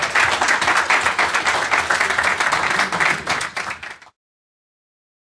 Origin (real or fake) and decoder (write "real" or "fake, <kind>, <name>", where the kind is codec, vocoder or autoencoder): real